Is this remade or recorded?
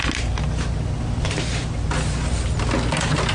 recorded